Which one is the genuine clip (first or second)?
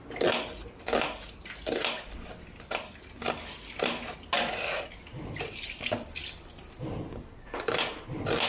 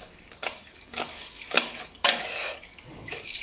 first